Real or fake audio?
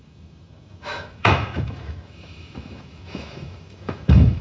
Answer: fake